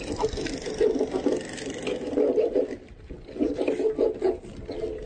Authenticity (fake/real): real